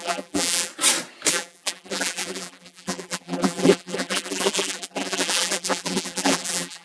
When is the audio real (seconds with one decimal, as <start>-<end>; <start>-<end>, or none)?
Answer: 0.7-1.3